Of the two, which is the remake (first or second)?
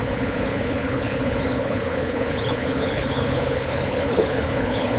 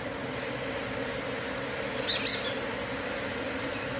first